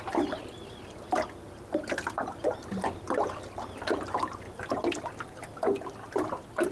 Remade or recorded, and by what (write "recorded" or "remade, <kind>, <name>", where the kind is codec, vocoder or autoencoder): recorded